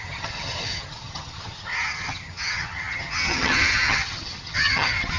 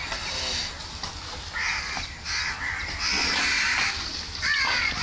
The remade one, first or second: first